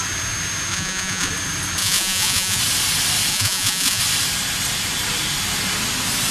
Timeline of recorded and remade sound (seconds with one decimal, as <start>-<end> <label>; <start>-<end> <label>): 0.0-0.7 recorded; 0.7-1.3 remade; 1.3-1.8 recorded; 1.8-2.6 remade; 2.6-3.3 recorded; 3.3-4.0 remade; 4.0-6.3 recorded